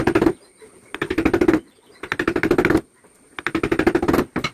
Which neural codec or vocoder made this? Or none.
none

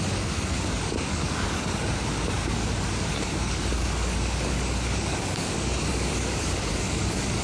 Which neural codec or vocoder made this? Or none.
codec, DAC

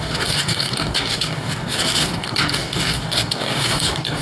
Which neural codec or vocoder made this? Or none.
codec, DAC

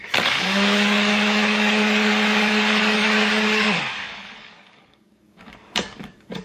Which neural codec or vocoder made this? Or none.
codec, DAC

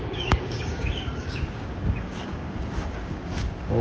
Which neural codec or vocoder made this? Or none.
codec, DAC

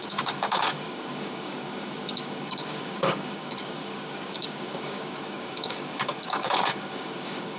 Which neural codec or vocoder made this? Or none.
codec, DAC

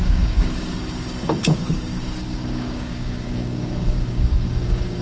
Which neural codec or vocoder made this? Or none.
codec, DAC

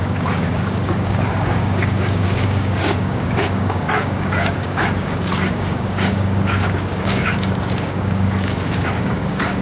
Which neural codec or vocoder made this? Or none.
codec, DAC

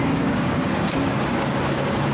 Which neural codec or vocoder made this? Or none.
codec, DAC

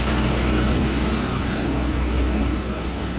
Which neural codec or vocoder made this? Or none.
codec, DAC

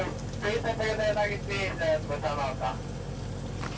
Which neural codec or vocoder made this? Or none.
none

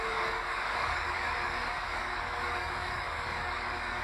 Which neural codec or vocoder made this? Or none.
codec, DAC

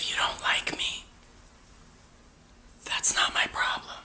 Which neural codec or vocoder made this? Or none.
none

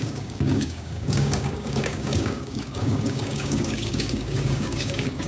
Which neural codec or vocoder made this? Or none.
codec, DAC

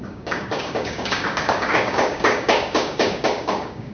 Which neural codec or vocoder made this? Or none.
codec, DAC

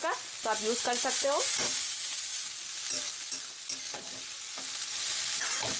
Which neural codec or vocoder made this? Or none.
none